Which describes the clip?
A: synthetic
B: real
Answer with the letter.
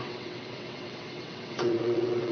A